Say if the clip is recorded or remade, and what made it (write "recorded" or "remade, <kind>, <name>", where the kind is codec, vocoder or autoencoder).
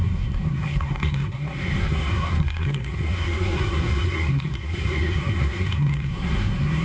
remade, codec, SNAC